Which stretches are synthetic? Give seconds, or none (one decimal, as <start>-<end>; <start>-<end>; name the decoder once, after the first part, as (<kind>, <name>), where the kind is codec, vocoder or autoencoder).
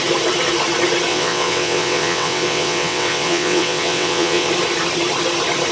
1.1-4.5 (vocoder, WaveNeXt)